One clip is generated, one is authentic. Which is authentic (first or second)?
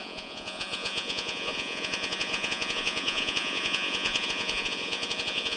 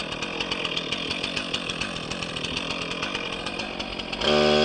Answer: second